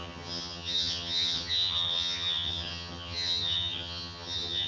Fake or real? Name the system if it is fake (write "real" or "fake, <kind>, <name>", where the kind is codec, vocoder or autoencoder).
fake, vocoder, HiFi-GAN